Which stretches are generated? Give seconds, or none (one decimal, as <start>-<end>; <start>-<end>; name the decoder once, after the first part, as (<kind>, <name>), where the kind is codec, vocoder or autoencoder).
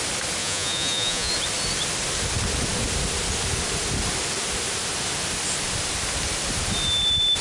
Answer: 0.4-1.3 (vocoder, Vocos)